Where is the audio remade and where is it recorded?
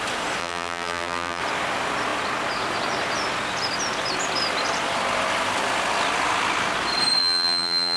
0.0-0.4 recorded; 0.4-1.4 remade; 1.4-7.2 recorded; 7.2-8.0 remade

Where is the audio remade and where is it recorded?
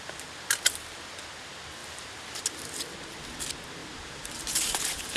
0.0-3.8 recorded; 3.8-5.2 remade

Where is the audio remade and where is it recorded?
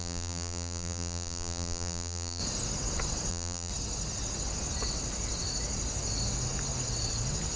0.0-2.4 remade; 2.4-3.3 recorded; 3.3-3.7 remade; 3.7-7.6 recorded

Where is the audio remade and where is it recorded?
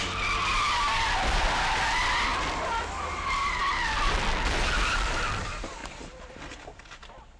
0.0-2.3 recorded; 2.3-3.1 remade; 3.1-7.4 recorded